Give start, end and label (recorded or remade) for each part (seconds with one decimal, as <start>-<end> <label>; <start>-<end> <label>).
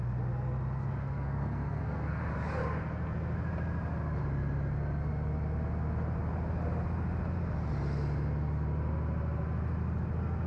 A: 0.0-1.0 recorded; 1.0-2.2 remade; 2.2-10.5 recorded